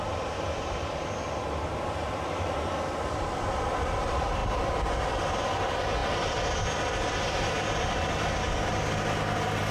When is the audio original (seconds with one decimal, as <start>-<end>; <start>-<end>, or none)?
0.0-9.7